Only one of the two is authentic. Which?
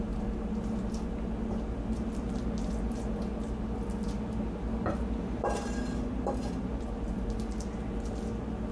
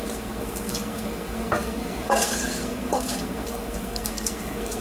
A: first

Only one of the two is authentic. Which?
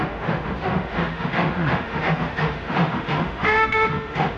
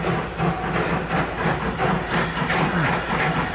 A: second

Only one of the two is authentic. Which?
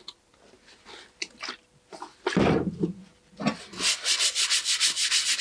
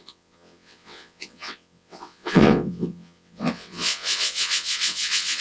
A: first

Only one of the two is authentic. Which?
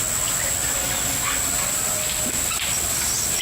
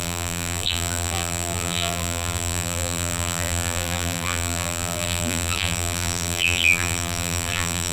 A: first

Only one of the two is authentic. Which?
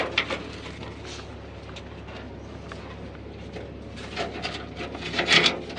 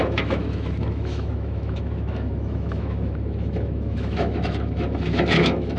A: first